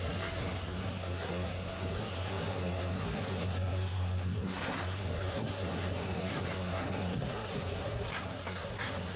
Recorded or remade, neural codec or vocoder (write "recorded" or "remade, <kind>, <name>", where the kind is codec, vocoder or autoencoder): remade, codec, SNAC